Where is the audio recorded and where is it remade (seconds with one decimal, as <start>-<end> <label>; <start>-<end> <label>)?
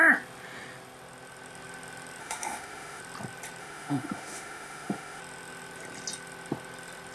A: 0.0-2.2 recorded; 2.2-3.0 remade; 3.0-3.6 recorded; 3.6-5.2 remade; 5.2-7.1 recorded